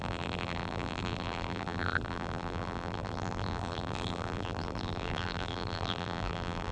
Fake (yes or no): yes